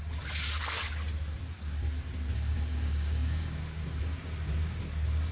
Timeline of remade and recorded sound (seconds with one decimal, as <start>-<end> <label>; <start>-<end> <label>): 0.0-2.3 recorded; 2.3-3.6 remade; 3.6-5.3 recorded